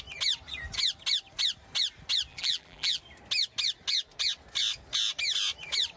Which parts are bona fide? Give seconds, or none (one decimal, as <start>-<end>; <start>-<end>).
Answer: 0.0-2.3; 3.0-6.0